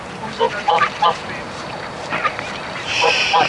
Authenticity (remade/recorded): remade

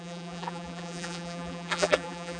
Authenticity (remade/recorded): remade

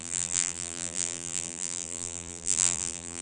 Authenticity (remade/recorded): remade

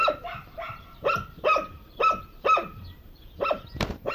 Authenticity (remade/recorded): remade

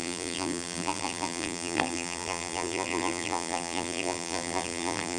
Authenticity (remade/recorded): remade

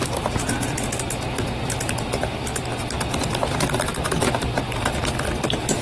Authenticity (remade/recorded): recorded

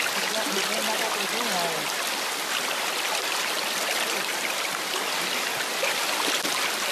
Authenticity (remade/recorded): recorded